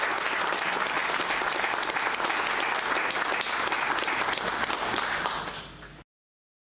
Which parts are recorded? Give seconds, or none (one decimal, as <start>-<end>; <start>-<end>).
0.0-6.6